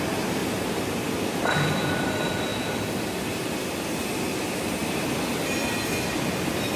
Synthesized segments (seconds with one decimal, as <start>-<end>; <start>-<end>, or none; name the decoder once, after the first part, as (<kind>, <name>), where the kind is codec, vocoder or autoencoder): 0.4-2.1 (vocoder, BigVGAN v2); 2.5-3.1